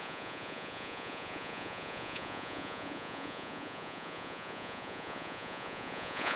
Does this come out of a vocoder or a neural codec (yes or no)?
yes